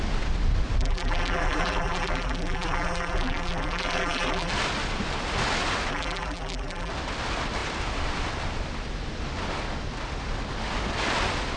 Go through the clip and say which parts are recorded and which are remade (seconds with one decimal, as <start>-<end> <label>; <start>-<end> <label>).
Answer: 0.0-0.8 recorded; 0.8-4.5 remade; 4.5-5.9 recorded; 5.9-6.9 remade; 6.9-11.6 recorded